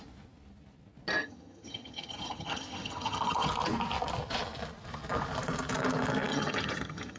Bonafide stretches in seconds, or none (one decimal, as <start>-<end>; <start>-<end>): 0.0-1.2; 3.5-6.3